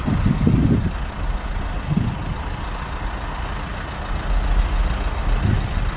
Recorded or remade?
recorded